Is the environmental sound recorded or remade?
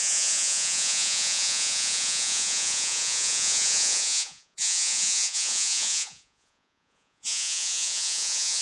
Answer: remade